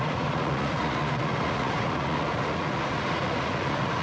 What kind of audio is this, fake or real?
fake